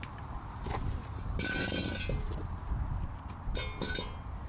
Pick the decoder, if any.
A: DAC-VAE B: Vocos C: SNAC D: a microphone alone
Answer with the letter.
D